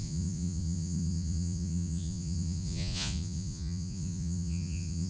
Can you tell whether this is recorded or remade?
remade